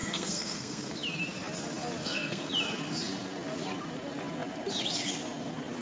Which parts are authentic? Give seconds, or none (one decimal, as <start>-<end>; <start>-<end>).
0.9-2.0; 2.5-5.8